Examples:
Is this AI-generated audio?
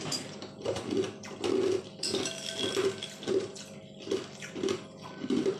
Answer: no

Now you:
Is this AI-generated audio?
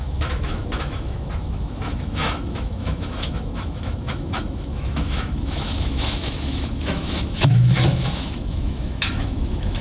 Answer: yes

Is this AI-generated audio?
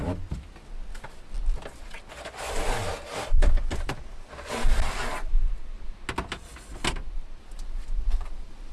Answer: no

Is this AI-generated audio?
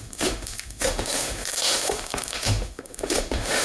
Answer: yes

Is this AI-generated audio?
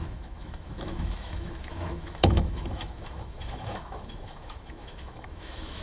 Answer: yes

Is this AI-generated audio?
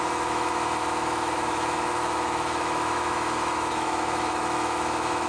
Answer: yes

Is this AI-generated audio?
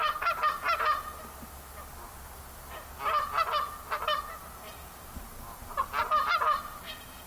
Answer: no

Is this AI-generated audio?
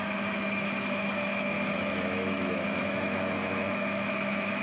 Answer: yes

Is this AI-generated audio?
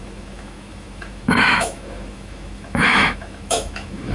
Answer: yes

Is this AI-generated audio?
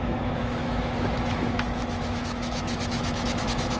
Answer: yes